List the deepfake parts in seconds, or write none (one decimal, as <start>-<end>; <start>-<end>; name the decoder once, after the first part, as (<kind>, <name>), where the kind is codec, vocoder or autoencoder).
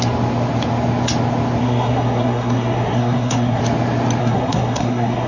1.6-3.6 (codec, SNAC); 4.2-5.3